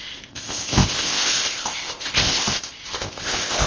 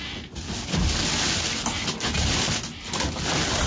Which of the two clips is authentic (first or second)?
second